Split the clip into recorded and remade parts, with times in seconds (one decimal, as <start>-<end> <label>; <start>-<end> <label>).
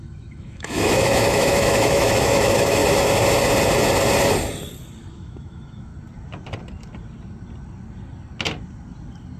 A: 0.0-2.8 remade; 2.8-5.1 recorded; 5.1-5.9 remade; 5.9-9.4 recorded